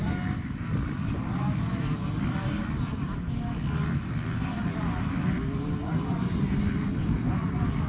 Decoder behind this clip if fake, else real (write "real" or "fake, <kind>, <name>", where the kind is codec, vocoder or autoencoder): real